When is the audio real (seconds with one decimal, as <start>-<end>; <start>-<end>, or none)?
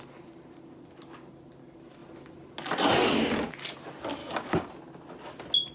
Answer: 0.0-4.2; 4.7-5.7